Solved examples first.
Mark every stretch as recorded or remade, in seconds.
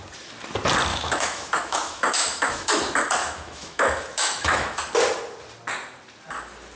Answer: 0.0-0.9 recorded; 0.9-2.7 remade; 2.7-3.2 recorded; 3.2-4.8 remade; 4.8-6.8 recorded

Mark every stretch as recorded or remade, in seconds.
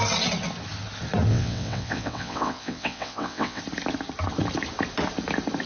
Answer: 0.0-1.3 recorded; 1.3-3.6 remade; 3.6-5.7 recorded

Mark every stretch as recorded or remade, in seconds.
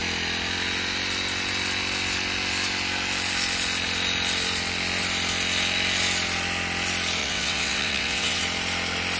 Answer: 0.0-7.2 recorded; 7.2-8.4 remade; 8.4-9.2 recorded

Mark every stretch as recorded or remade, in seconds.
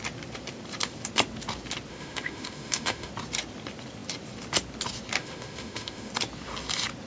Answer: 0.0-1.9 recorded; 1.9-3.1 remade; 3.1-5.2 recorded; 5.2-6.1 remade; 6.1-7.1 recorded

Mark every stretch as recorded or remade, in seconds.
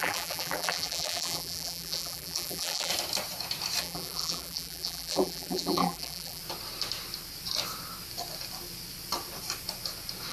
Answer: 0.0-2.9 remade; 2.9-3.8 recorded; 3.8-6.4 remade; 6.4-10.3 recorded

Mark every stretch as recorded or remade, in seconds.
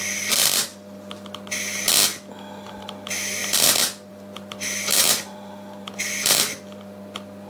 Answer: 0.0-0.7 remade; 0.7-2.7 recorded; 2.7-7.5 remade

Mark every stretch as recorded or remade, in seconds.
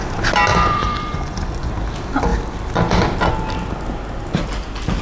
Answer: 0.0-0.5 recorded; 0.5-1.7 remade; 1.7-5.0 recorded